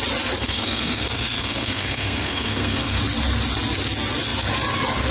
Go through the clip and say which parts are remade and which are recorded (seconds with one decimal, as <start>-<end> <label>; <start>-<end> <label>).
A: 0.0-0.4 recorded; 0.4-3.0 remade; 3.0-5.1 recorded